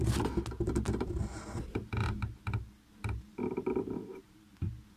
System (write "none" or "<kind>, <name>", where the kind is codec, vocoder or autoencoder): none